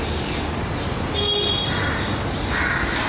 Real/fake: real